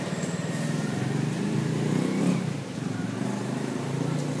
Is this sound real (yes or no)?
no